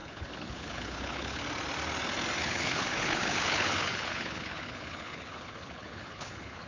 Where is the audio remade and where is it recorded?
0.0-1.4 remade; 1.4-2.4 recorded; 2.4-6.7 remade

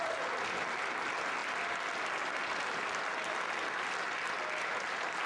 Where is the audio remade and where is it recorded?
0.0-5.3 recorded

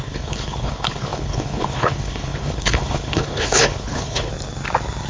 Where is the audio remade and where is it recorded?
0.0-4.3 remade; 4.3-5.1 recorded